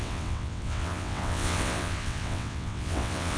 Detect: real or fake fake